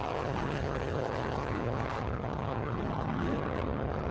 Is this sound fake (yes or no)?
yes